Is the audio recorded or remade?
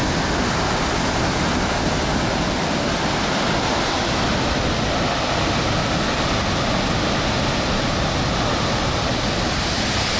recorded